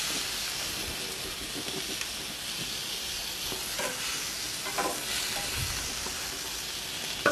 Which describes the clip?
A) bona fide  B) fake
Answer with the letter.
A